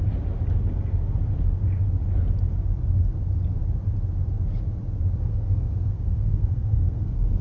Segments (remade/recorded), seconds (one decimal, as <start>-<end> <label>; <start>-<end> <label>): 0.0-5.2 recorded; 5.2-7.4 remade